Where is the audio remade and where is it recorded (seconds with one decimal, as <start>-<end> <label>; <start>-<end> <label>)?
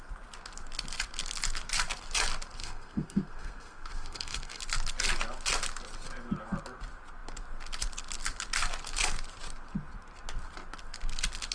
0.0-2.6 recorded; 2.6-4.6 remade; 4.6-11.5 recorded